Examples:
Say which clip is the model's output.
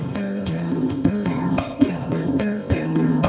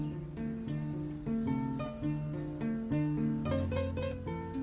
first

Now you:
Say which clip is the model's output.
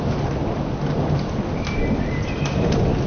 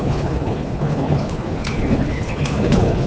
second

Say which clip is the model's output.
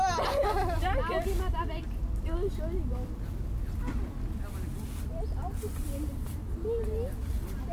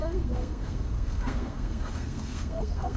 second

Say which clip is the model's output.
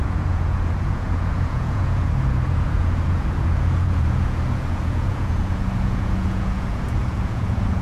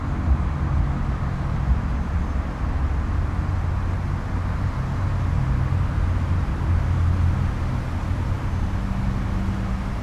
first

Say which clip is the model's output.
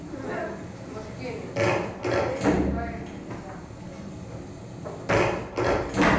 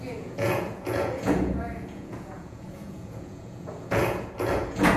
second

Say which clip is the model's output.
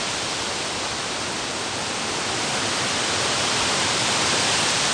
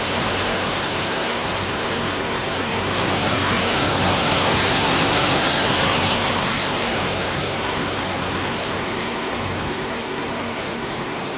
second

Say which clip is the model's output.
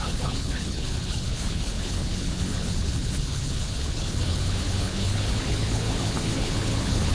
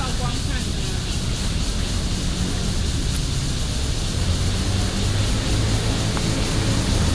first